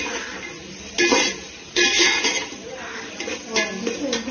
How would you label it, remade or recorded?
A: recorded